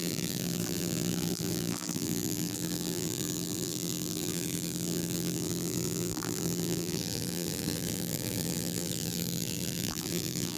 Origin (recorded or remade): remade